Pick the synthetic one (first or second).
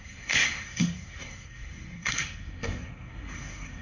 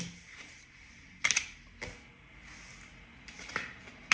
first